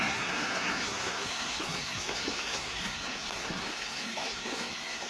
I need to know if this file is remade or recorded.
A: remade